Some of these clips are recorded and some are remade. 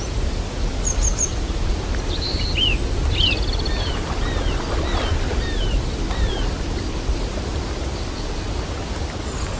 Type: recorded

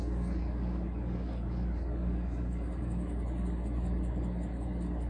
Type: remade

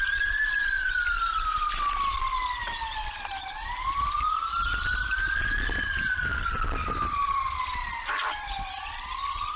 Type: recorded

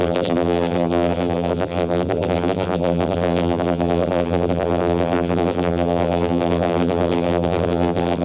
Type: remade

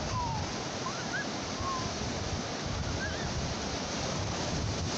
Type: recorded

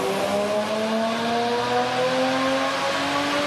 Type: recorded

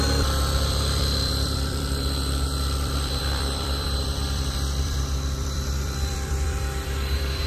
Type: remade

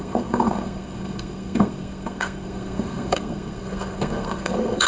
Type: remade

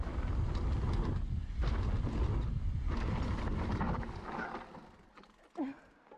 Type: recorded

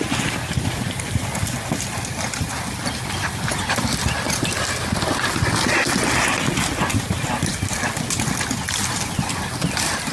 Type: recorded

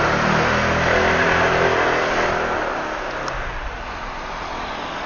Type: recorded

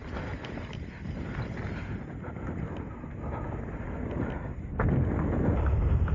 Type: recorded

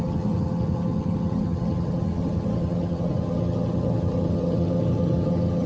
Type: remade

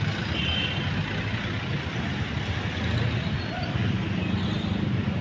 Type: recorded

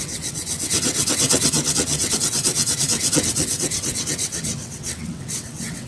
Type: remade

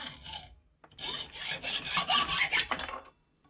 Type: recorded